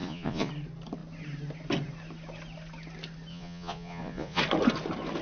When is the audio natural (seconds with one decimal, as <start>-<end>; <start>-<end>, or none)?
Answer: 0.5-3.3; 4.4-5.2